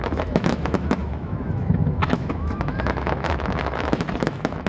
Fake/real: fake